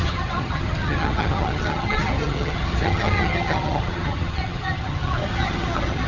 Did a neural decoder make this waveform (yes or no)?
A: yes